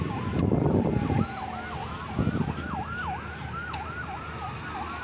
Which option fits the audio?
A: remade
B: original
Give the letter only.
B